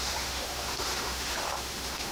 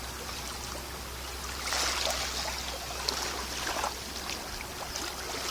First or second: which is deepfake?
first